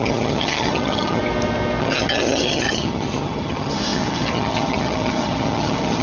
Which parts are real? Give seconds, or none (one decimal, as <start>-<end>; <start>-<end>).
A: 1.2-1.8